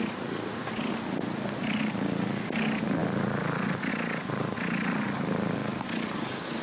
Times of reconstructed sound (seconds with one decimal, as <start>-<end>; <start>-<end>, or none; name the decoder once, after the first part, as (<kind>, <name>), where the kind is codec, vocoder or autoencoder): none